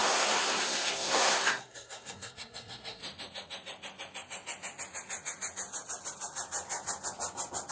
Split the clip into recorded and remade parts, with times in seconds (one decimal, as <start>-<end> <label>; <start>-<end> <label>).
0.0-3.0 remade; 3.0-7.7 recorded